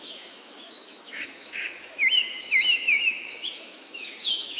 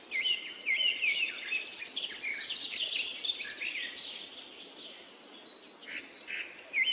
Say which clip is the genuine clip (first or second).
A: second